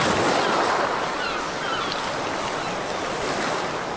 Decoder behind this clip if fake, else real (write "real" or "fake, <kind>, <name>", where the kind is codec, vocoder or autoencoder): real